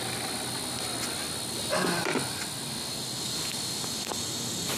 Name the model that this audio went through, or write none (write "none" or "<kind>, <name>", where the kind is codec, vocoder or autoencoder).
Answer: none